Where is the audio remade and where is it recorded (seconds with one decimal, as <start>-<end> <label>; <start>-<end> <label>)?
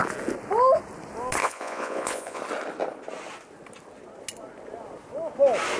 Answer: 0.0-1.4 recorded; 1.4-2.4 remade; 2.4-5.8 recorded